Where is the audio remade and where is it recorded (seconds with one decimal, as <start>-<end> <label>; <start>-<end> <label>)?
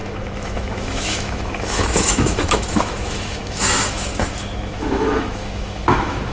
0.0-6.3 remade